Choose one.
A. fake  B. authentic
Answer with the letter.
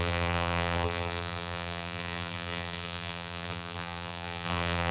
A